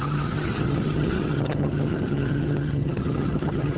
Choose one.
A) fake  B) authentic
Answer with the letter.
A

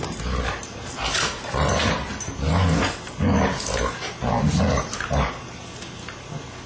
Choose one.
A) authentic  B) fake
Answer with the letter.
A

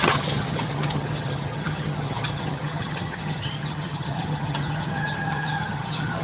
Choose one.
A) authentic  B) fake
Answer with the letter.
B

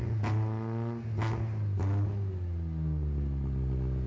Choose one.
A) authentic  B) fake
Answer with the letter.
A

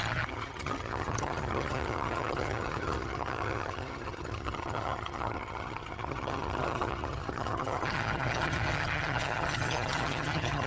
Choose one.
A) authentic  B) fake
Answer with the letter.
B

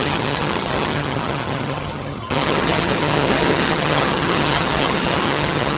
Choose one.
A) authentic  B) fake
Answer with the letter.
B